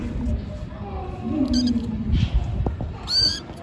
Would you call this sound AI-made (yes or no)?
no